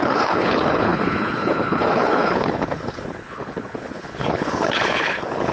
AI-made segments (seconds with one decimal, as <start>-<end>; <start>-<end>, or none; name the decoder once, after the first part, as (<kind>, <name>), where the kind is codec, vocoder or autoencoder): 0.0-5.5 (codec, HILCodec)